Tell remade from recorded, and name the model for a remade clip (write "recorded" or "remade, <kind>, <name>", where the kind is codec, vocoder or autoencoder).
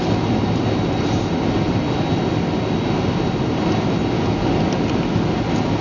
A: recorded